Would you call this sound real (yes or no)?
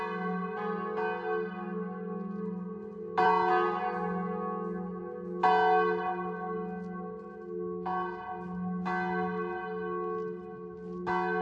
yes